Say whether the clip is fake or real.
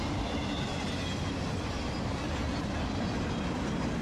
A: real